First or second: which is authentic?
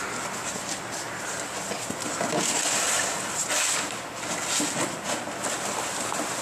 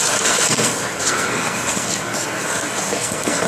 first